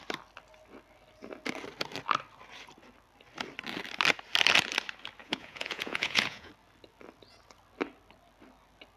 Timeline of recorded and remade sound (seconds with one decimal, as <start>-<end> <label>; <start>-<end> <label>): 0.0-5.2 recorded; 5.2-6.5 remade; 6.5-9.0 recorded